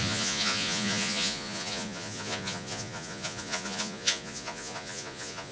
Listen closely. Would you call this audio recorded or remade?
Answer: remade